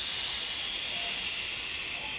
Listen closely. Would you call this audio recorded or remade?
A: recorded